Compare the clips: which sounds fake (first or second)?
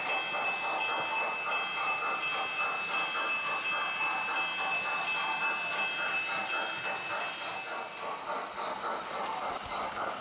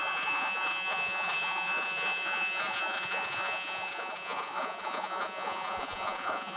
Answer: second